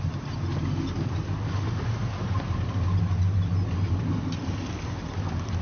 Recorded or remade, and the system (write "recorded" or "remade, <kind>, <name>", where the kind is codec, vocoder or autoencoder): recorded